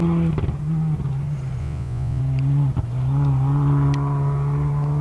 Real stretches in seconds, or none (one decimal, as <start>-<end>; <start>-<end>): 0.0-1.6; 2.2-5.0